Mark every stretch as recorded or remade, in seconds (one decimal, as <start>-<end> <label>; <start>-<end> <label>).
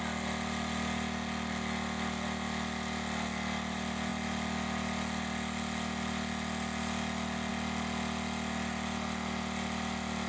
0.0-10.3 recorded